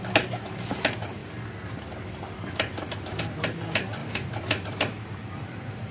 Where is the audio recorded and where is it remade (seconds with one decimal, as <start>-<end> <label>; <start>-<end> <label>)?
0.0-1.2 remade; 1.2-2.1 recorded; 2.1-4.0 remade; 4.0-4.6 recorded; 4.6-5.9 remade